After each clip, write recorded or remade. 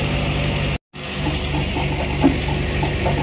recorded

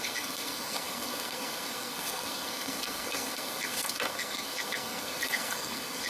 remade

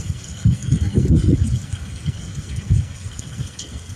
remade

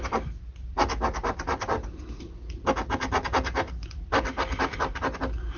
recorded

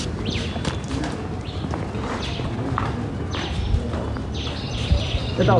recorded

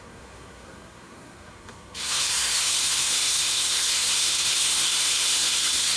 remade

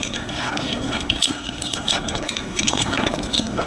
remade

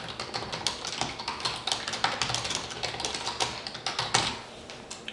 recorded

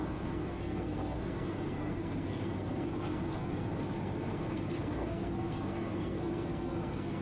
remade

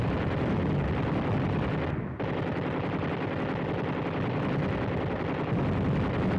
recorded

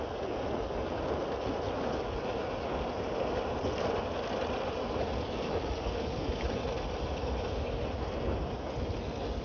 recorded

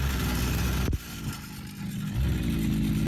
recorded